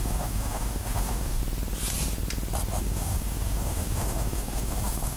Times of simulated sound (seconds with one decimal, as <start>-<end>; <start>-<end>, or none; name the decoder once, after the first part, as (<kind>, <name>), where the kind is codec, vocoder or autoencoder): 0.0-1.4 (codec, DAC); 2.8-5.2